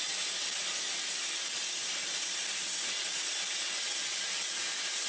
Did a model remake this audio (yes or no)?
no